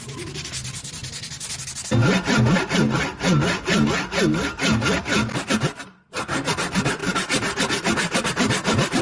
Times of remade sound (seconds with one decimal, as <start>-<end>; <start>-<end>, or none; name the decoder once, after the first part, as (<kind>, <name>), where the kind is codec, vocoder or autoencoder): 0.0-1.0 (vocoder, BigVGAN v2); 1.6-2.0; 5.0-7.0; 8.3-9.0